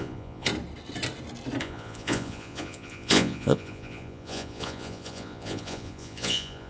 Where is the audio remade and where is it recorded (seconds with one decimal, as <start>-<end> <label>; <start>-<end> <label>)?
0.0-0.5 remade; 0.5-1.6 recorded; 1.6-6.7 remade